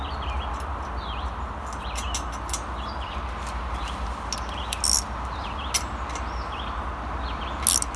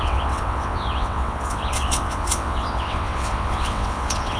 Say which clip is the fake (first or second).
second